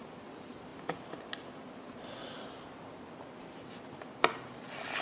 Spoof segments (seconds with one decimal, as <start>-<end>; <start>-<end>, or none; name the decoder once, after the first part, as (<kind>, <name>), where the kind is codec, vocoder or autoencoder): none